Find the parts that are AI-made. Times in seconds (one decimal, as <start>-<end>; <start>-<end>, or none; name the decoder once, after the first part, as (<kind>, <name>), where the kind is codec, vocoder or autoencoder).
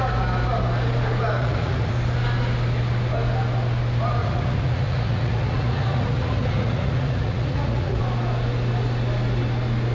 1.4-1.9 (vocoder, Vocos); 4.2-8.0